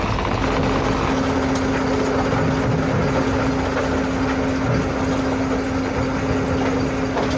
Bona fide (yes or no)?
yes